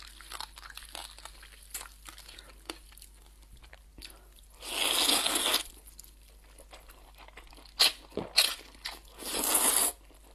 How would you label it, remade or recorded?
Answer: recorded